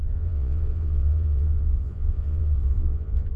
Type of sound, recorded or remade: remade